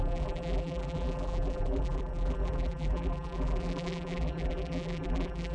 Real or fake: fake